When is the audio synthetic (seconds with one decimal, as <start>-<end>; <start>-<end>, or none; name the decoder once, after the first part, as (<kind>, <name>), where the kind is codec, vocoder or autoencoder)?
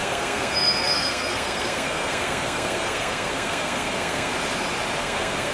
0.0-4.3 (codec, SNAC); 5.0-5.5